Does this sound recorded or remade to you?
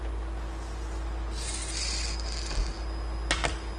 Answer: recorded